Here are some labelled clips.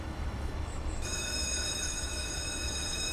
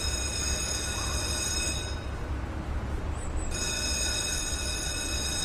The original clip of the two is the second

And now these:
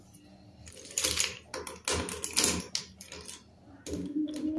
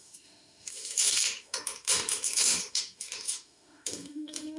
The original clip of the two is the first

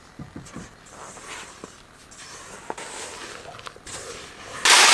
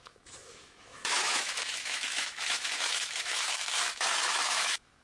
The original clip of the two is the first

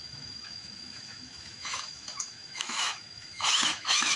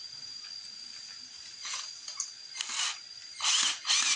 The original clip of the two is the second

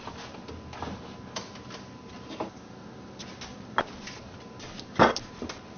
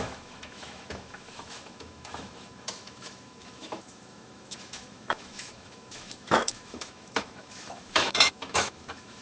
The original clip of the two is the first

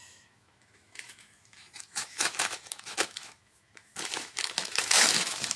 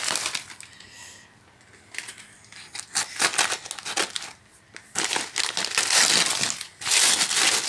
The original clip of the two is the second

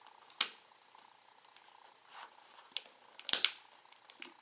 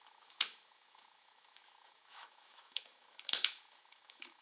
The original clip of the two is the first